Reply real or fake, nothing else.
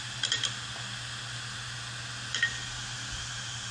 real